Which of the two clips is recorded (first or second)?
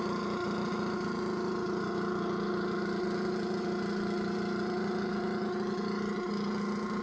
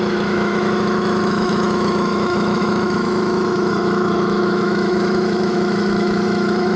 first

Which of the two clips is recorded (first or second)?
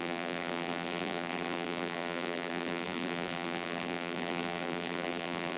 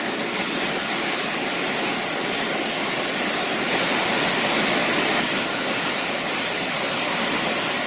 second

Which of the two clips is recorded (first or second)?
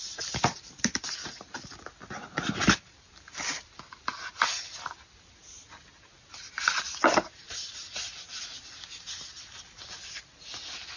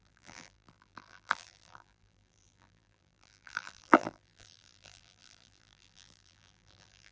first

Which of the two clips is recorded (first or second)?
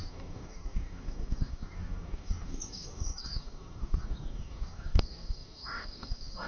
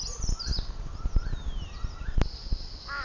second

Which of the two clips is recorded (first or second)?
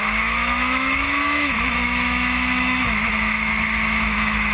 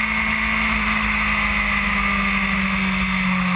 second